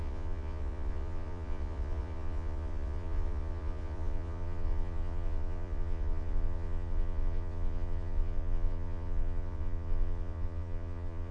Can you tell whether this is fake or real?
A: fake